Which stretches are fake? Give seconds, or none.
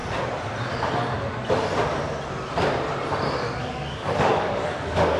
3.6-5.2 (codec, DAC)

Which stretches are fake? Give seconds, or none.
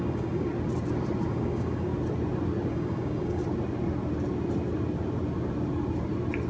0.0-0.5 (codec, DAC); 1.3-1.9; 2.7-3.4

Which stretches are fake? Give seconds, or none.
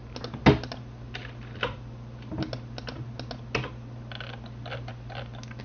none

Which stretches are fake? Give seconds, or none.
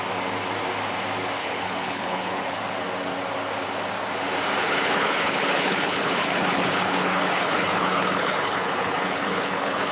1.4-2.6 (codec, HILCodec); 4.6-9.9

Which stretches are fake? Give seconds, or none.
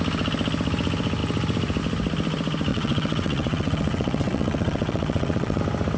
2.7-5.6 (vocoder, WaveNeXt)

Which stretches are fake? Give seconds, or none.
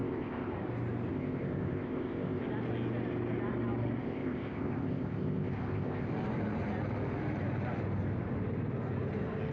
0.0-0.5 (codec, ZipCodec); 1.1-2.4; 4.0-6.1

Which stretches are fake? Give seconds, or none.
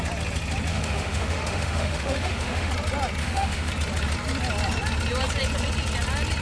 0.7-2.7 (autoencoder, DAC-VAE); 3.2-3.7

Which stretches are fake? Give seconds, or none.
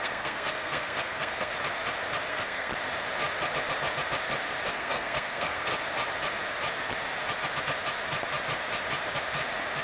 0.0-1.5 (codec, SNAC); 2.3-2.7; 4.7-5.7